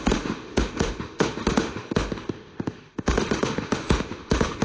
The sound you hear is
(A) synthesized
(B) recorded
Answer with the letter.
A